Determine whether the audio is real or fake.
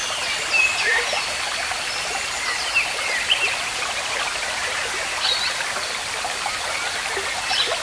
real